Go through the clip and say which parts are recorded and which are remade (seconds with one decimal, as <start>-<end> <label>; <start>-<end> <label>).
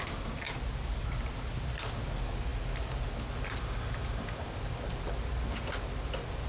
0.0-6.5 recorded